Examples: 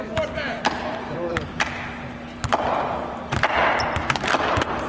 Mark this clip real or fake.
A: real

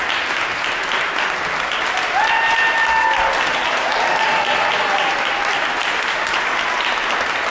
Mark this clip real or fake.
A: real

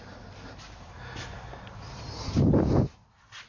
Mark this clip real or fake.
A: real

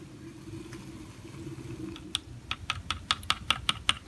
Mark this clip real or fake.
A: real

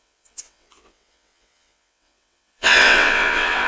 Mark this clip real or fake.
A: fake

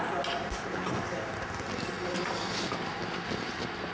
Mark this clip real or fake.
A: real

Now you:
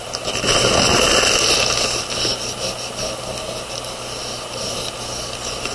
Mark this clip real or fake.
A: real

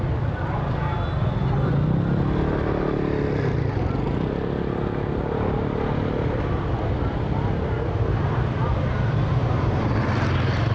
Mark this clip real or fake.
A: real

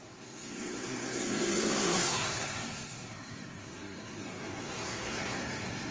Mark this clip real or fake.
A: fake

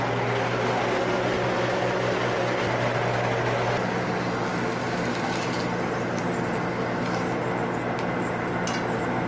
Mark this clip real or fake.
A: real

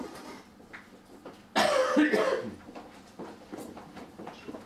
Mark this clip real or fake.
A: real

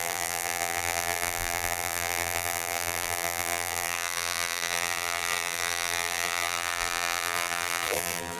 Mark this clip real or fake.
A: fake